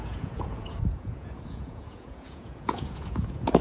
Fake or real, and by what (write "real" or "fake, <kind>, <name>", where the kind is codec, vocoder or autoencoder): fake, vocoder, Vocos